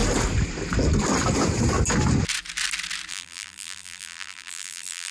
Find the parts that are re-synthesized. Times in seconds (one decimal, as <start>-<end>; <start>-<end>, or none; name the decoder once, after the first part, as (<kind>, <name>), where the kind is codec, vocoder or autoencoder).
3.1-5.1 (vocoder, BigVGAN v2)